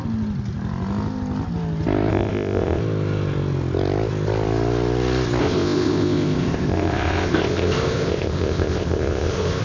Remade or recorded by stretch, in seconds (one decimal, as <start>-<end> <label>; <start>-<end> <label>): 0.0-2.1 recorded; 2.1-2.8 remade; 2.8-5.4 recorded; 5.4-9.6 remade